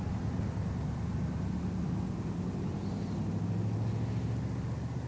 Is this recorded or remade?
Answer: recorded